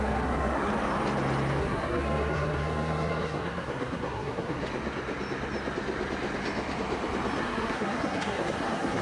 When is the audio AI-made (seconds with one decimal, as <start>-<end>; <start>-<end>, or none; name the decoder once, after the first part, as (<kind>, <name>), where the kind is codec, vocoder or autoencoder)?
0.0-0.7 (codec, SNAC); 1.6-4.6; 7.4-9.0